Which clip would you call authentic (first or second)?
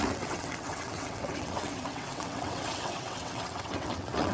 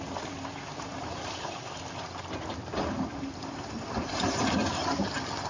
second